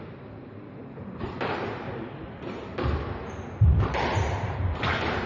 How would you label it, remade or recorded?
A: recorded